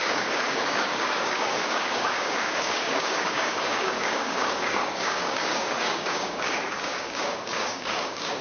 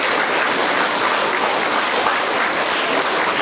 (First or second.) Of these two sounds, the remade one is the first